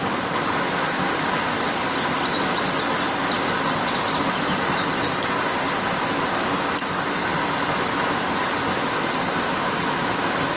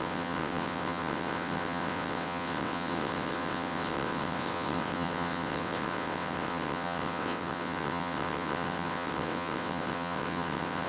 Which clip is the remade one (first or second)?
second